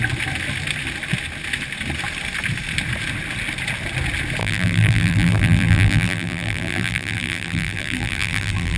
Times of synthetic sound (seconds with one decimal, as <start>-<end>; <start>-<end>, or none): 4.4-8.8